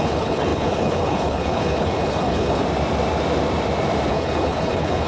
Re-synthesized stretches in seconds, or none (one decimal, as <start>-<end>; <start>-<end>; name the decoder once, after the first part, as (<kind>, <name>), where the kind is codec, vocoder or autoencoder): 0.0-2.6 (codec, HILCodec); 4.1-5.1